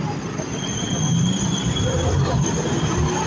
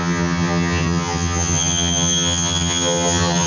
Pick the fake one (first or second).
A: second